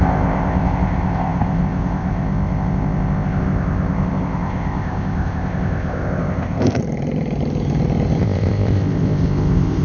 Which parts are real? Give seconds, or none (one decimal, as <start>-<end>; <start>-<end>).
6.8-8.2

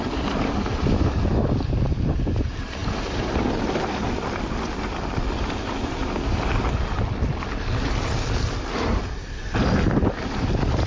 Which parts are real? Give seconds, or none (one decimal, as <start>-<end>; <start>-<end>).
0.0-10.9